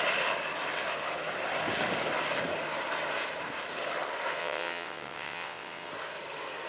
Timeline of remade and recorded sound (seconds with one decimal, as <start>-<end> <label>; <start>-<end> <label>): 0.0-4.4 recorded; 4.4-5.9 remade; 5.9-6.7 recorded